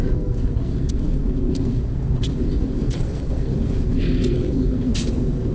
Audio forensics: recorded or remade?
remade